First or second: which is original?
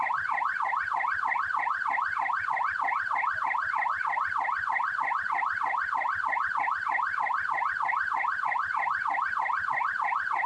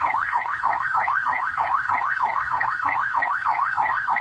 first